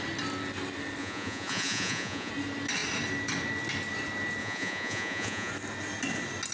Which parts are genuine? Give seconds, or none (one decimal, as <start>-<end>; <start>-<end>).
0.0-1.0; 2.3-4.4; 5.5-6.5